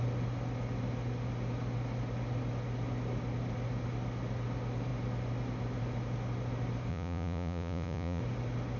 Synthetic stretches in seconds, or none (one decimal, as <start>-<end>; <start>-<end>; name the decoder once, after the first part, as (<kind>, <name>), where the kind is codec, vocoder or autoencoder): 6.9-8.2 (vocoder, Vocos)